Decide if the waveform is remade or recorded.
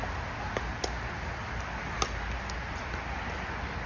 recorded